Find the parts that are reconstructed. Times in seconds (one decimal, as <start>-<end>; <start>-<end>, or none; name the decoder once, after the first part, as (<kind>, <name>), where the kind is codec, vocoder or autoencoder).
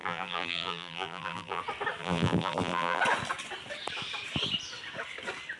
0.0-1.6 (vocoder, BigVGAN v2); 2.0-3.0